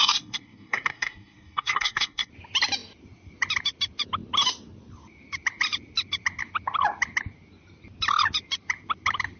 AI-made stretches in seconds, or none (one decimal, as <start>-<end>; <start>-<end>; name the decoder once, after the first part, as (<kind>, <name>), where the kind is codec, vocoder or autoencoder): 0.0-2.3 (codec, SNAC)